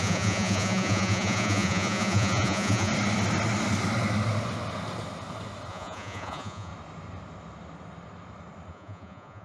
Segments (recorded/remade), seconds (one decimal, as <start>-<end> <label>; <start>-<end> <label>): 0.0-2.9 remade; 2.9-5.7 recorded; 5.7-6.7 remade; 6.7-8.7 recorded; 8.7-9.4 remade